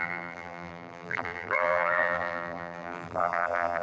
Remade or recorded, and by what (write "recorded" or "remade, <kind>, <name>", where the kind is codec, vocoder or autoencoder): remade, vocoder, BigVGAN v2